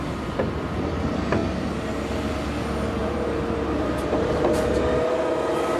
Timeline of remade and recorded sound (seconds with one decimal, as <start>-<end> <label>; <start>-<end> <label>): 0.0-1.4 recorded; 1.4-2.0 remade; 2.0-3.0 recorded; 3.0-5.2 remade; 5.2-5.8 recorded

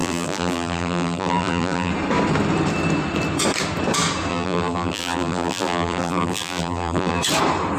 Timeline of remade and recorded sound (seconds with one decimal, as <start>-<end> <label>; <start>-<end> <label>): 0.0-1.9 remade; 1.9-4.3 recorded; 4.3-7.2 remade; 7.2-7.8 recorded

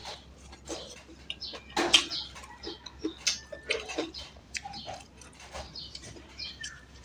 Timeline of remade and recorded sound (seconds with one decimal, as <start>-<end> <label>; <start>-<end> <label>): 0.0-3.7 recorded; 3.7-7.0 remade

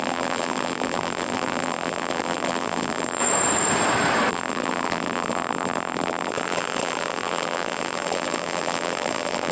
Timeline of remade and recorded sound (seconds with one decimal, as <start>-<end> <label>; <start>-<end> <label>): 0.0-3.2 remade; 3.2-4.3 recorded; 4.3-9.5 remade

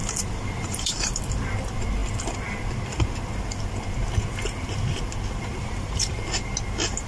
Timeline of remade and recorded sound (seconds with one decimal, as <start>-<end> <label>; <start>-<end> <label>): 0.0-1.2 remade; 1.2-5.6 recorded; 5.6-6.2 remade; 6.2-7.1 recorded

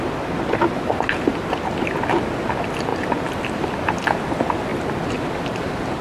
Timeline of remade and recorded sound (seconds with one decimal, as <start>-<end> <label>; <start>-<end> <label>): 0.0-2.9 recorded; 2.9-3.6 remade; 3.6-4.7 recorded; 4.7-6.0 remade

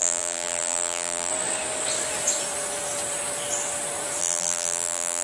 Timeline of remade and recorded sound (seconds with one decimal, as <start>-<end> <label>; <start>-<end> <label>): 0.0-1.3 remade; 1.3-4.2 recorded; 4.2-5.2 remade

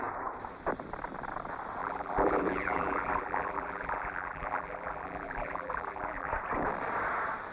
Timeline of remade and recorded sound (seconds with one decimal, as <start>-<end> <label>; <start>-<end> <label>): 0.0-1.8 recorded; 1.8-6.3 remade; 6.3-7.5 recorded